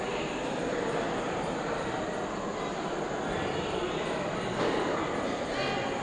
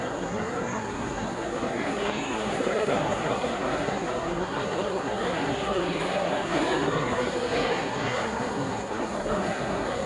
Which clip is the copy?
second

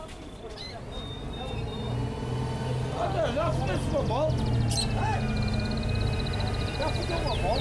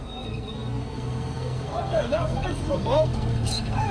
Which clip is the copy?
second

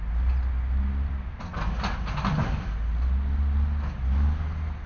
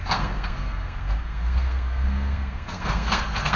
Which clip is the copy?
second